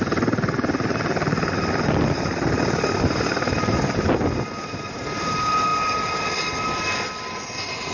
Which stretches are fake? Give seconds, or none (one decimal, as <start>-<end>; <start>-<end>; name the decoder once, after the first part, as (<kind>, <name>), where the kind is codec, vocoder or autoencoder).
none